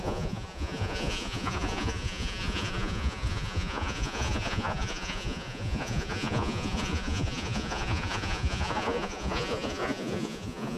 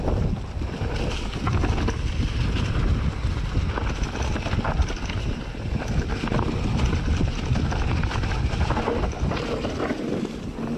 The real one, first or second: second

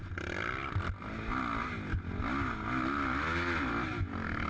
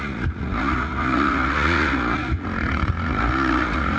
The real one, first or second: first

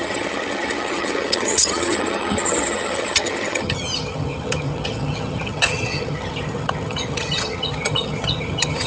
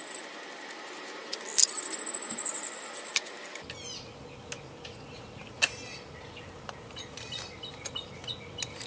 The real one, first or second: second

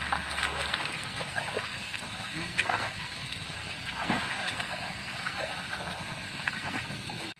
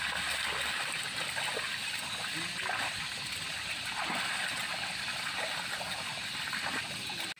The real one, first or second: second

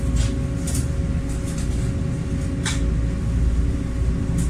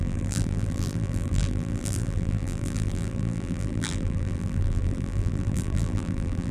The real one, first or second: first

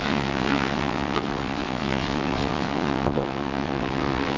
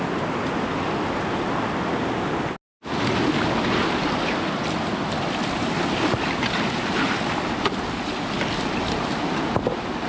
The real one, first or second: second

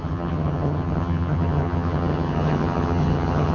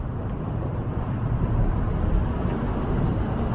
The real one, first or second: second